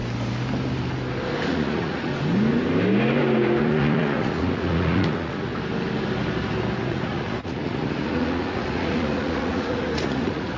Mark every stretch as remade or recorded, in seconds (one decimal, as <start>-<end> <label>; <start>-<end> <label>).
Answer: 0.0-1.5 recorded; 1.5-2.1 remade; 2.1-3.6 recorded; 3.6-5.5 remade; 5.5-6.8 recorded; 6.8-10.6 remade